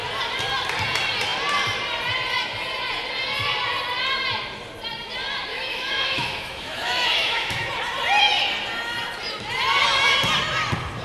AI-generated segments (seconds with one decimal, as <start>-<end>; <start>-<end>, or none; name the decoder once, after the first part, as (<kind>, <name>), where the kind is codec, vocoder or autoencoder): 5.5-7.7 (autoencoder, DAC-VAE)